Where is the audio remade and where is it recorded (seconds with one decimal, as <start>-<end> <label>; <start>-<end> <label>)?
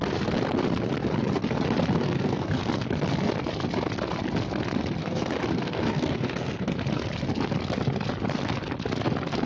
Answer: 0.0-2.0 recorded; 2.0-2.6 remade; 2.6-5.0 recorded; 5.0-6.8 remade; 6.8-9.5 recorded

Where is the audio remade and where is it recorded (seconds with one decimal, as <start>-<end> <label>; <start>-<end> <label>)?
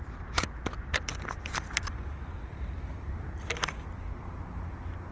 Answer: 0.0-5.1 recorded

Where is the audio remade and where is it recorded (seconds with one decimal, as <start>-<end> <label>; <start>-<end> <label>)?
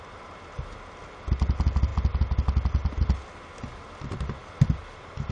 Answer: 0.0-5.3 recorded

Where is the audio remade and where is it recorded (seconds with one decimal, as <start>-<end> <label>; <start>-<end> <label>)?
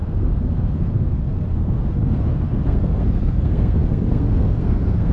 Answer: 0.0-5.1 remade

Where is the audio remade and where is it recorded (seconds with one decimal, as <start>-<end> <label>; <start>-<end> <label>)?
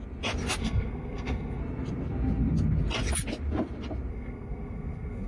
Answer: 0.0-0.6 recorded; 0.6-1.6 remade; 1.6-4.1 recorded; 4.1-5.3 remade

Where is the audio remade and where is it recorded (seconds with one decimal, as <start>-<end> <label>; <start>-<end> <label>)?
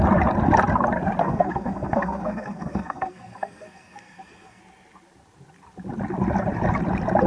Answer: 0.0-1.2 recorded; 1.2-4.6 remade; 4.6-7.3 recorded